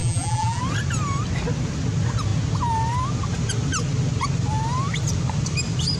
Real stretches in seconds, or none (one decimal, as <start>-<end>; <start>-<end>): 0.6-6.0